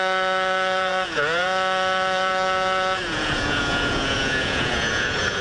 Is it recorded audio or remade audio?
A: remade